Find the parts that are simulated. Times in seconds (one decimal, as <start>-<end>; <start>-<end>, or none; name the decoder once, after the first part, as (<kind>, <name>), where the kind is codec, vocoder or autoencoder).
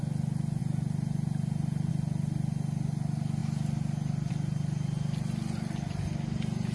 none